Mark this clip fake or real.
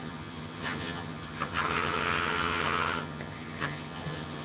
fake